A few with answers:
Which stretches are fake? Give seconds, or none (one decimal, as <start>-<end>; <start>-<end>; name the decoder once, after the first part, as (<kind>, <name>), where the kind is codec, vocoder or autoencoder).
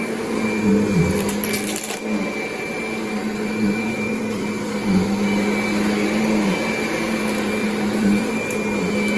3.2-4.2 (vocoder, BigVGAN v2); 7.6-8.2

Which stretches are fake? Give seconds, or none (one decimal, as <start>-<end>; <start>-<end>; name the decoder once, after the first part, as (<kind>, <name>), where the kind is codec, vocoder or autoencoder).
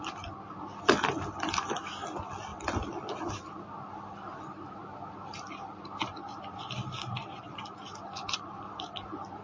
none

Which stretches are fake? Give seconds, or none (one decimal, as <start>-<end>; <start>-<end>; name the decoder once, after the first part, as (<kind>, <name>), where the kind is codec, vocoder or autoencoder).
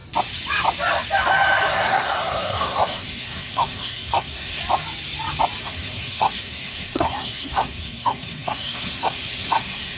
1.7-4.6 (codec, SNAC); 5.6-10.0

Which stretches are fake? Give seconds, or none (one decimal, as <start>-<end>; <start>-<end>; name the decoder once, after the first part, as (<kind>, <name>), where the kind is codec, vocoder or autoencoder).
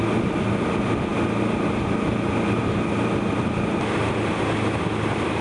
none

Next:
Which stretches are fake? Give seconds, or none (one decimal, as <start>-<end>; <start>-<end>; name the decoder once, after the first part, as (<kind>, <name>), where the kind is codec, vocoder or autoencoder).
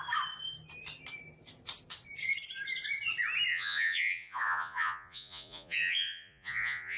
3.5-7.0 (vocoder, Vocos)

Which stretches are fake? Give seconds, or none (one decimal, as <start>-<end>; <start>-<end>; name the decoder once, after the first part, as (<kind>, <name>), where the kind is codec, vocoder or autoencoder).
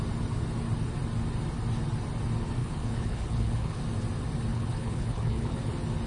2.6-3.8 (codec, HILCodec); 4.5-5.6